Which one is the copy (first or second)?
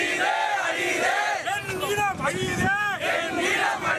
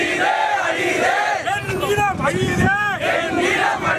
second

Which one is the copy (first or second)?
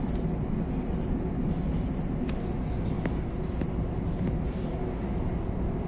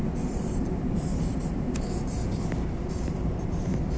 second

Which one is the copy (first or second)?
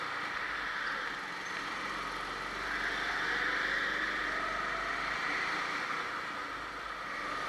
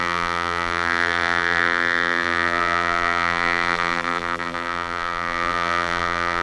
second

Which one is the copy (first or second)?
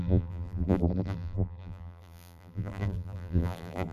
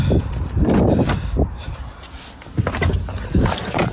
first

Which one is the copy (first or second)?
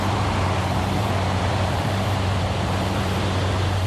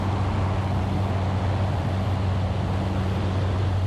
first